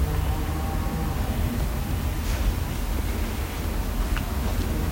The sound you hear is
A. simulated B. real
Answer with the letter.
B